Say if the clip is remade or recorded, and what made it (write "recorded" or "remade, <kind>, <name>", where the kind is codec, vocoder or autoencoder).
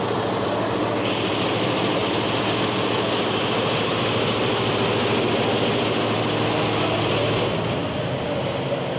recorded